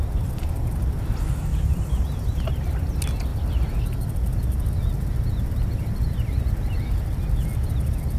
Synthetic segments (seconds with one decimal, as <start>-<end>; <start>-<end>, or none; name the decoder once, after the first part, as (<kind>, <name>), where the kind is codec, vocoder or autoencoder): 1.5-2.5 (vocoder, BigVGAN v2)